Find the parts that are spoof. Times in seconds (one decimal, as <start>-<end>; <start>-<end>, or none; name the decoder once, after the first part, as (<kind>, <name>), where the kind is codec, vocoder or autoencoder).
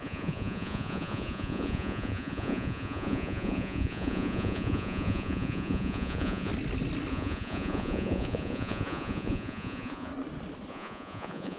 0.0-6.5 (vocoder, Vocos); 7.1-10.1; 10.7-11.6